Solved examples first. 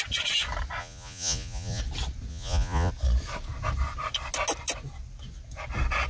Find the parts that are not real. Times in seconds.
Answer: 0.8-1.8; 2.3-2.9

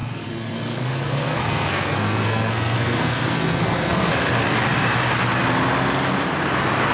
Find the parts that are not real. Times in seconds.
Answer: 0.0-4.1